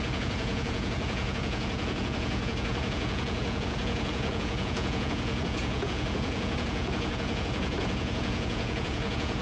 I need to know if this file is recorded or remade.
remade